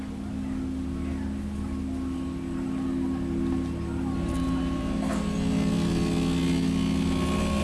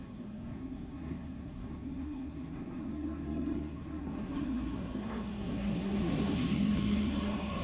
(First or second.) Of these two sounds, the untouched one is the first